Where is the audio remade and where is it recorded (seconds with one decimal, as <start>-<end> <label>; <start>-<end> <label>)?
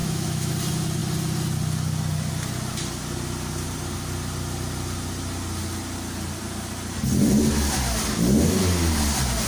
0.0-0.5 remade; 0.5-9.5 recorded